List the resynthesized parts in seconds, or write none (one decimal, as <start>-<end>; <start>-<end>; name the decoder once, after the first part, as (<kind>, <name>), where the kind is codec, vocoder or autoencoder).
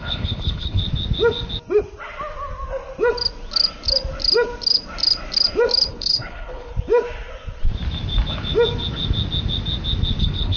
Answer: 0.0-0.8 (codec, HILCodec); 5.9-6.7; 10.2-10.6